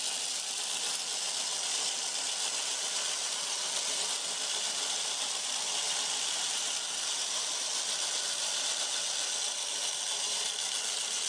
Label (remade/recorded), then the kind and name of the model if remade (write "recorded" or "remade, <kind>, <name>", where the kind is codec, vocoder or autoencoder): recorded